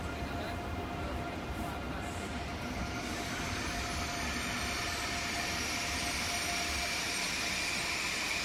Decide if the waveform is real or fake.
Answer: real